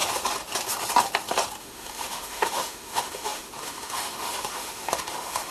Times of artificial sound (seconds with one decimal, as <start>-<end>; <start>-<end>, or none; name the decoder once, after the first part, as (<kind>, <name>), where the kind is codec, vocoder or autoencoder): 1.6-5.5 (autoencoder, DAC-VAE)